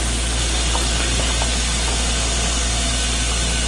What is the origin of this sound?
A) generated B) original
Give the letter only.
B